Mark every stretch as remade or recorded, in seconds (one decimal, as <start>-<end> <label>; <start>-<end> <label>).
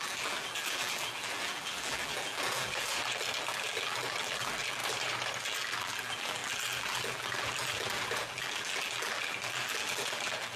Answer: 0.0-4.8 remade; 4.8-5.4 recorded; 5.4-10.6 remade